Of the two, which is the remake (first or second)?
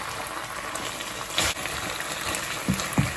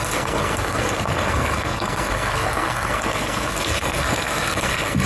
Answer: second